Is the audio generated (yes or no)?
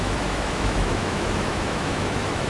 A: yes